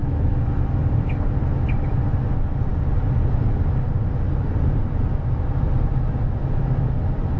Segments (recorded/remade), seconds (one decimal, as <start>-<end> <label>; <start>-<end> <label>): 0.0-1.0 remade; 1.0-6.4 recorded; 6.4-6.9 remade; 6.9-7.4 recorded